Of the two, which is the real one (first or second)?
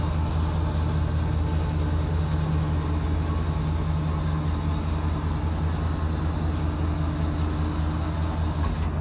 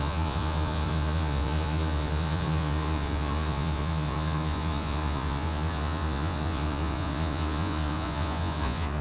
first